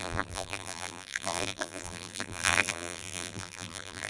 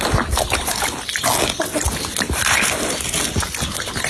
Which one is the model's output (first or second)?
first